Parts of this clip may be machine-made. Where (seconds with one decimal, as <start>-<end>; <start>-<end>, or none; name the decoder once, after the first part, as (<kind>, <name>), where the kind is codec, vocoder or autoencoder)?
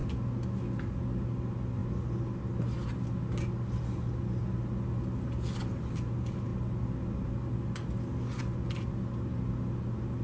none